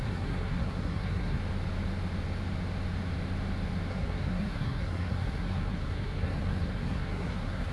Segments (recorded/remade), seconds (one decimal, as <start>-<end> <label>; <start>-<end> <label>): 0.0-1.4 remade; 1.4-3.9 recorded; 3.9-7.7 remade